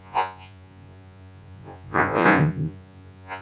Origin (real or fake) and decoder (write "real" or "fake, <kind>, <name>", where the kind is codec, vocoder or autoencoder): fake, vocoder, Vocos